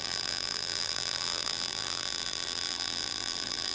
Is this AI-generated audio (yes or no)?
yes